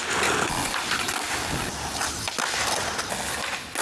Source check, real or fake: real